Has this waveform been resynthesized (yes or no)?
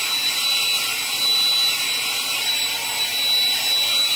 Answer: no